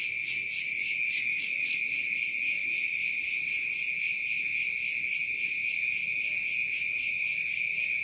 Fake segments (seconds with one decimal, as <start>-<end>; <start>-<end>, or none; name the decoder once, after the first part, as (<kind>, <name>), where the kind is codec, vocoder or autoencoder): 0.8-1.8 (autoencoder, DAC-VAE); 2.6-3.4